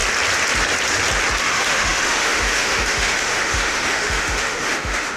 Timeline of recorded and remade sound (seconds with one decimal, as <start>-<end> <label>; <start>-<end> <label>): 0.0-1.4 recorded; 1.4-5.2 remade